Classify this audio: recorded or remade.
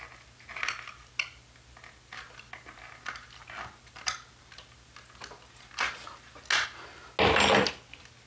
recorded